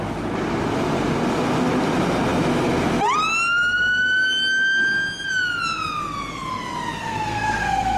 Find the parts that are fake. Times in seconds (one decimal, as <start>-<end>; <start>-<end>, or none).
7.0-8.0